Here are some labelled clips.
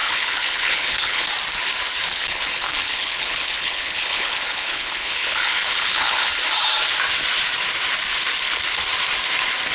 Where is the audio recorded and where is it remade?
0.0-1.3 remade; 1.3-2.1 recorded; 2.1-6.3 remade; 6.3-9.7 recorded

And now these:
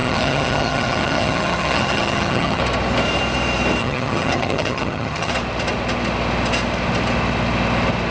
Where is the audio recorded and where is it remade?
0.0-2.6 remade; 2.6-3.8 recorded; 3.8-5.3 remade; 5.3-8.1 recorded

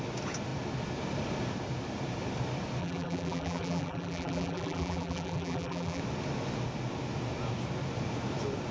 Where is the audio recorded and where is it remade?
0.0-2.8 recorded; 2.8-6.0 remade; 6.0-8.7 recorded